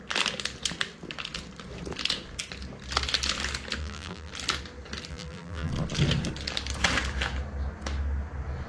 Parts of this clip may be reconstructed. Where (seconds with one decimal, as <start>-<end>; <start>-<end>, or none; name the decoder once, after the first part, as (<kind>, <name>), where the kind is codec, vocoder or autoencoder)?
3.8-4.3 (vocoder, BigVGAN v2); 5.1-5.7